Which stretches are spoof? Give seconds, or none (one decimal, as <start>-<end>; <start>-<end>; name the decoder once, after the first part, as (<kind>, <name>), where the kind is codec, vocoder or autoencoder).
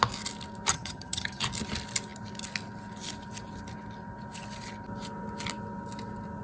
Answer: 0.7-1.4 (vocoder, HiFi-GAN)